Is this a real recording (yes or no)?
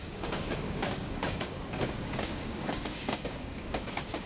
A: no